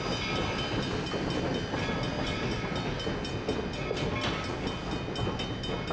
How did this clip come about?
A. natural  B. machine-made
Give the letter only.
A